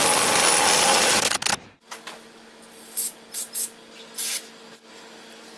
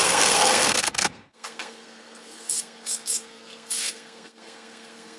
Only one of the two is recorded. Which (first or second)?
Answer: first